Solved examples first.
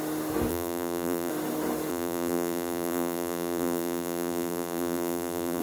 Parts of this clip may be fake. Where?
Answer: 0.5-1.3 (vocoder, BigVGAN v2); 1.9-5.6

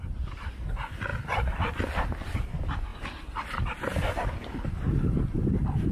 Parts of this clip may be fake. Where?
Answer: 1.1-1.8 (vocoder, BigVGAN v2)

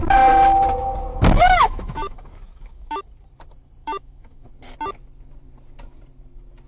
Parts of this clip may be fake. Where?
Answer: 1.1-3.0 (autoencoder, DAC-VAE); 3.8-4.5

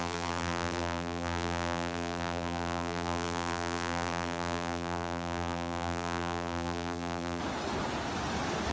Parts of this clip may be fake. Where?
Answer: 0.0-7.4 (vocoder, BigVGAN v2)

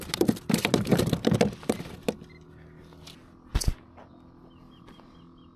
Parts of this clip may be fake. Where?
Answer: none

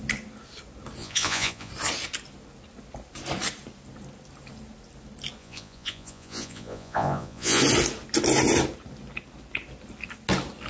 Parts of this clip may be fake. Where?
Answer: 1.0-1.7 (vocoder, Vocos); 5.4-7.6

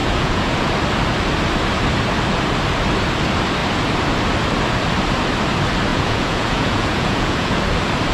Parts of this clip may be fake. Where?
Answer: 0.0-0.7 (vocoder, Vocos); 5.9-7.6